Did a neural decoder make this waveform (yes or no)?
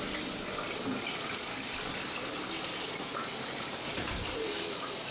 no